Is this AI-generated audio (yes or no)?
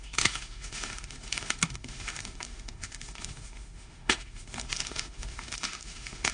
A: yes